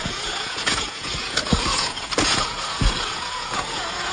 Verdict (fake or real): fake